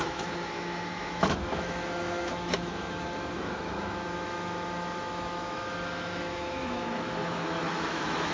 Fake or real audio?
fake